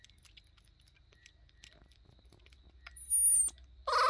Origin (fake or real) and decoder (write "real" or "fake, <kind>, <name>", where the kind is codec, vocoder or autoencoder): real